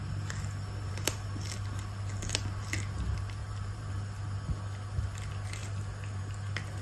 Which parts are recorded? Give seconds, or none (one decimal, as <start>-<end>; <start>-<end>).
0.0-3.4; 3.9-6.8